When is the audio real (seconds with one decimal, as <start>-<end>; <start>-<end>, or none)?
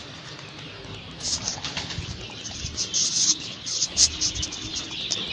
0.0-1.5; 2.1-3.0; 4.0-5.3